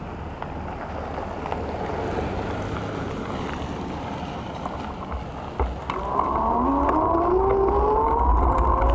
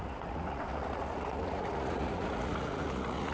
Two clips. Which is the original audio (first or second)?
first